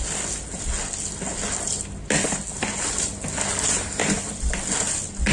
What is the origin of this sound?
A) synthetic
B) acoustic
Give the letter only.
B